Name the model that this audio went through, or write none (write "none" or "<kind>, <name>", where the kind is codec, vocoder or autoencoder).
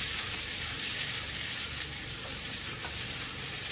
vocoder, BigVGAN v2